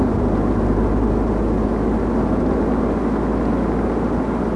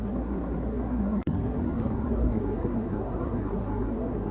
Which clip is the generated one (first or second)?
second